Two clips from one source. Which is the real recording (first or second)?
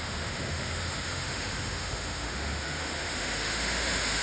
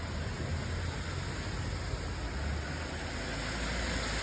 second